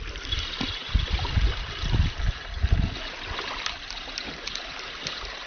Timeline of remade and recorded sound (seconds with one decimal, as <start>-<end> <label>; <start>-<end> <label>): 0.0-5.5 recorded